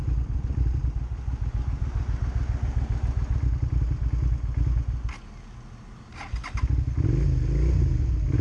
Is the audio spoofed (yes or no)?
no